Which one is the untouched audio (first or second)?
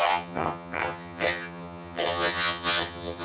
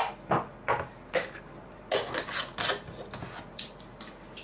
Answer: second